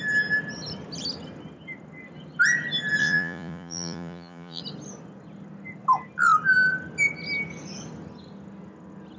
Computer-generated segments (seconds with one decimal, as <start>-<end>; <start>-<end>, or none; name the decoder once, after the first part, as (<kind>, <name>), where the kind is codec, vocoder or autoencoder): 3.0-4.6 (vocoder, Vocos)